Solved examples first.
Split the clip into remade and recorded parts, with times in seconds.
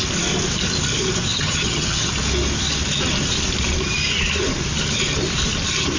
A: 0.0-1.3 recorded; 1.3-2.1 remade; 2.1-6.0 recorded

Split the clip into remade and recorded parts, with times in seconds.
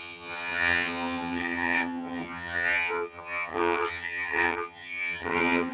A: 0.0-5.7 remade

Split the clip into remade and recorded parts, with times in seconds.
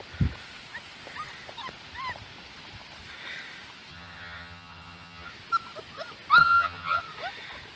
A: 0.0-3.9 recorded; 3.9-5.3 remade; 5.3-6.4 recorded; 6.4-7.0 remade; 7.0-7.8 recorded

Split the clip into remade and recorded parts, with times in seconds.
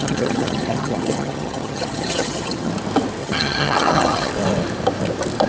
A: 0.0-2.7 remade; 2.7-3.2 recorded; 3.2-4.3 remade; 4.3-5.5 recorded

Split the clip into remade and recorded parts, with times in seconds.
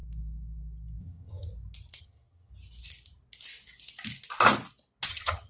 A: 0.0-1.0 recorded; 1.0-1.5 remade; 1.5-2.0 recorded; 2.0-2.5 remade; 2.5-5.1 recorded; 5.1-5.5 remade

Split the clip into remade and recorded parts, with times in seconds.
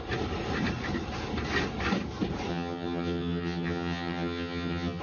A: 0.0-2.5 recorded; 2.5-5.0 remade